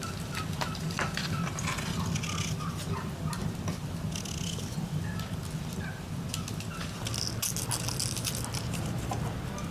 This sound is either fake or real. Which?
real